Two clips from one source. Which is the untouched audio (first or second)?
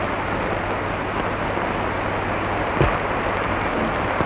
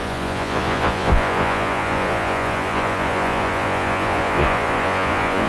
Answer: first